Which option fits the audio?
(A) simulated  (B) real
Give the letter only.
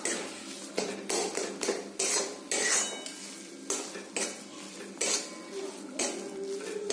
B